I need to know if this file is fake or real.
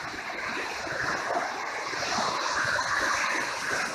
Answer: real